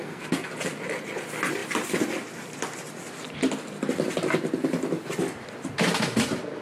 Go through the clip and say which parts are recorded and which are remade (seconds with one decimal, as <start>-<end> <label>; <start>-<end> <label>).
0.0-0.5 remade; 0.5-6.6 recorded